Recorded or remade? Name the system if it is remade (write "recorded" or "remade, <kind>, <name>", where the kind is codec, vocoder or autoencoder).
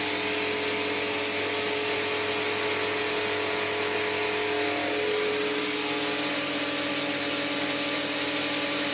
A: recorded